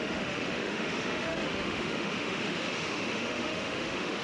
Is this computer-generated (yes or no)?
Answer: yes